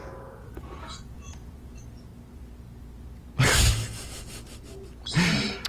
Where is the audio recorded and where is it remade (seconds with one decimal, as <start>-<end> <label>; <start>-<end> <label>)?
0.0-2.1 remade; 2.1-5.7 recorded